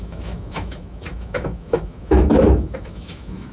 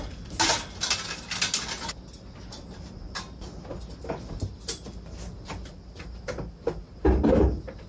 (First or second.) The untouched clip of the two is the second